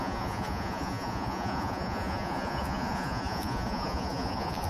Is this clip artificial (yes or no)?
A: yes